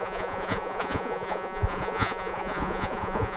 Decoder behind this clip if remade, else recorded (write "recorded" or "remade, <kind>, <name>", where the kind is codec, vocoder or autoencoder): remade, vocoder, Vocos